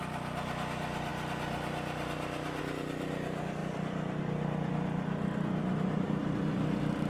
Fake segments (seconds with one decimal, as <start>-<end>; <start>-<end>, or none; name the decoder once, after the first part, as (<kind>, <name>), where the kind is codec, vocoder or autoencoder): none